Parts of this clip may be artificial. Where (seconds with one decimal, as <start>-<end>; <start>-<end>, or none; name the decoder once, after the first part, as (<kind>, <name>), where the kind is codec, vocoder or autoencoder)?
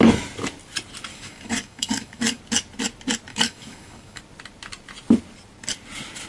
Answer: 1.1-2.4 (codec, DAC); 3.3-4.2